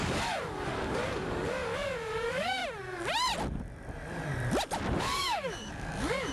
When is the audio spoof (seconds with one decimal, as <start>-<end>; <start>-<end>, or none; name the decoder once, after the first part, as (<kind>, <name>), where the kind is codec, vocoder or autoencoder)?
0.0-2.6 (codec, DAC); 5.0-6.3